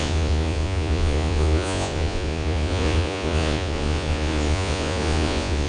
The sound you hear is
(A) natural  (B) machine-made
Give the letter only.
B